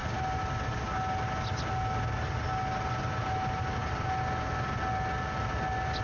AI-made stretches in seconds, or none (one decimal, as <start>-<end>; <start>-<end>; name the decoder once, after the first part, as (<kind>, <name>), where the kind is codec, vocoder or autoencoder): none